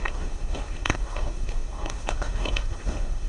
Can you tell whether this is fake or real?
fake